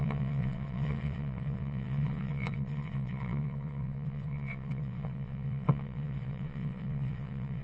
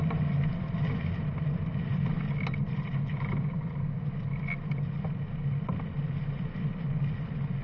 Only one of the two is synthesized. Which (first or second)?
first